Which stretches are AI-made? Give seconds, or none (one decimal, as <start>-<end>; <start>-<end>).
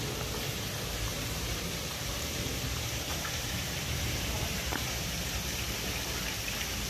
1.1-5.2